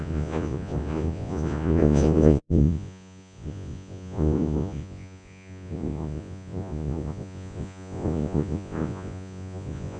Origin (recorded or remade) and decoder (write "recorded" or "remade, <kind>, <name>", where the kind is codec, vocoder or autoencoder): remade, vocoder, Vocos